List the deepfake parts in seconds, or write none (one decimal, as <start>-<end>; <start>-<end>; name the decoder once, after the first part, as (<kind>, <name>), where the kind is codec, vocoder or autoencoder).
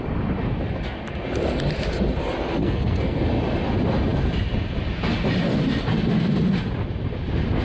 2.6-3.2 (codec, SNAC)